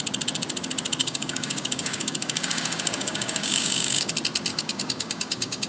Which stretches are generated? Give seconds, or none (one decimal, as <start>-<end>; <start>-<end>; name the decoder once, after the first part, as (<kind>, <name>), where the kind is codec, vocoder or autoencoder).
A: 1.0-4.1 (codec, DAC); 4.5-5.7